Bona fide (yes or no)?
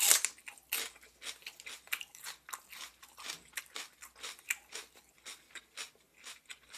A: yes